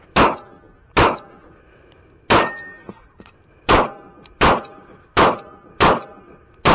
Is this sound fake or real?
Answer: real